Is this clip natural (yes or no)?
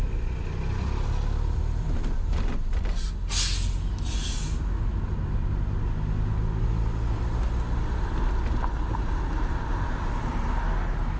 yes